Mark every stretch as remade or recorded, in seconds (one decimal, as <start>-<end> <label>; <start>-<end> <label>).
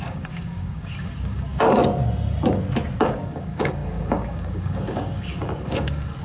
0.0-1.8 remade; 1.8-3.0 recorded; 3.0-6.2 remade